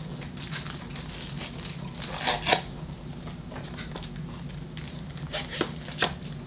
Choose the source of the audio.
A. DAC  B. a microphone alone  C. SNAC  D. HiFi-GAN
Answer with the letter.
B